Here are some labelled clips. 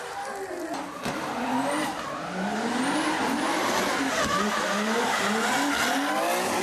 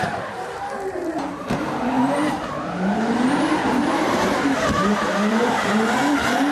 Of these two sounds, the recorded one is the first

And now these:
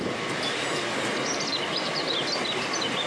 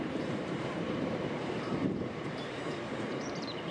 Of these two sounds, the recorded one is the first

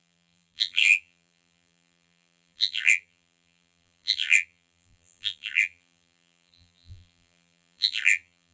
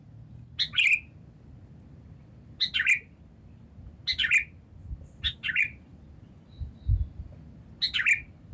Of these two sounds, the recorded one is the second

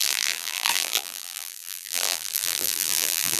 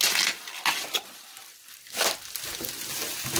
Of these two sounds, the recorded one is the second